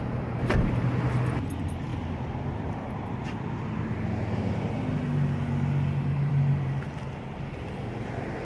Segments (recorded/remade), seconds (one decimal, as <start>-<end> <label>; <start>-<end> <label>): 0.0-8.4 recorded